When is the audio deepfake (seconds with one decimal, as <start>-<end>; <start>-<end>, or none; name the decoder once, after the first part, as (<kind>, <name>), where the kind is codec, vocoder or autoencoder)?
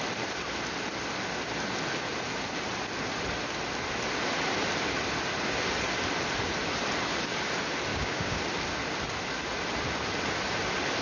7.9-8.4 (codec, DAC)